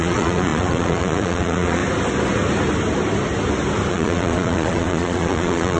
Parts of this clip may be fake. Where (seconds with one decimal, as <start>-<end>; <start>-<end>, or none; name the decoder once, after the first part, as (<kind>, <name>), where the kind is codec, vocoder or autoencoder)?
0.0-1.8 (vocoder, Vocos); 3.9-5.8